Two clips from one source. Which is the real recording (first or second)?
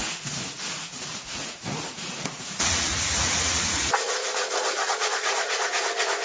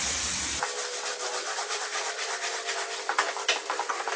second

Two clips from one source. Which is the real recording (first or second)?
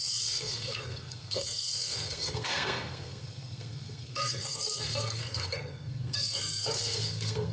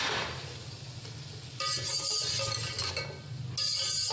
second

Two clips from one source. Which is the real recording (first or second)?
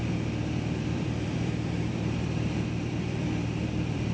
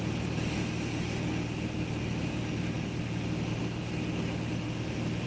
second